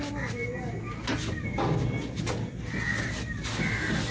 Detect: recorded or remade recorded